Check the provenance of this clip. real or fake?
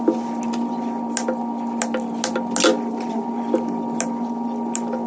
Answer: real